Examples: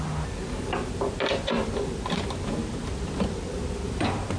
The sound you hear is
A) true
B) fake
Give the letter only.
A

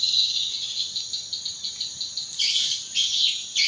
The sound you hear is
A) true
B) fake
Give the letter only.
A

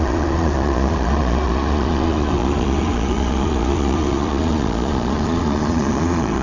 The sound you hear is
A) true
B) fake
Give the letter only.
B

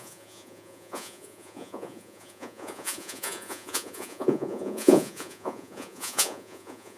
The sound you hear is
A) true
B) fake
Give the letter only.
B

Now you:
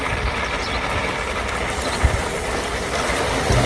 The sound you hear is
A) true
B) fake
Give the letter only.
A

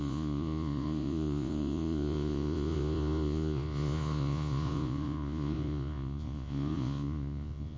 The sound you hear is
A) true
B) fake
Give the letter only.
B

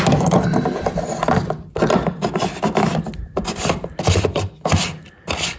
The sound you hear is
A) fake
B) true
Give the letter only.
B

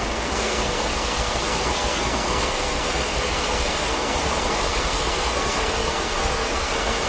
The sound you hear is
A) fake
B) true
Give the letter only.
A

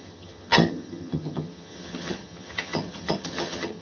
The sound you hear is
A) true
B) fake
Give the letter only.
B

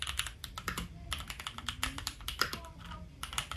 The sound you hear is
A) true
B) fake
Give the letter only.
A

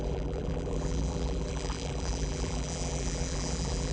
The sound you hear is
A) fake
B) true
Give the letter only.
A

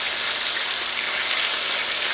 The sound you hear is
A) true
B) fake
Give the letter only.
A